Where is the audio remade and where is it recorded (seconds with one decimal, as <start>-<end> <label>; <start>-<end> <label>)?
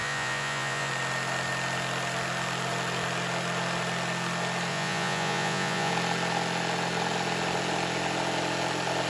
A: 0.0-0.9 remade; 0.9-4.7 recorded; 4.7-5.9 remade; 5.9-9.1 recorded